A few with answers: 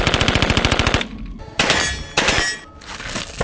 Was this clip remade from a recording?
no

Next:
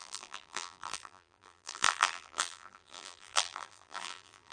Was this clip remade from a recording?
yes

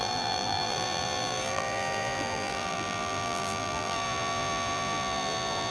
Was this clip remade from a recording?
yes